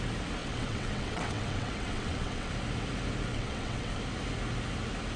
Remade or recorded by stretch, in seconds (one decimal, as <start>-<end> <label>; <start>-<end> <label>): 0.0-0.4 recorded; 0.4-2.5 remade; 2.5-3.3 recorded; 3.3-4.0 remade; 4.0-5.2 recorded